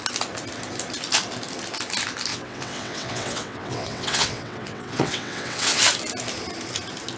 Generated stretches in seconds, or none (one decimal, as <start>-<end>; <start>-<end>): 2.3-5.8